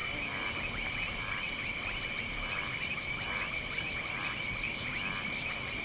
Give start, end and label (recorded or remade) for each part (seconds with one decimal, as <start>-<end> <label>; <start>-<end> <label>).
0.0-5.8 recorded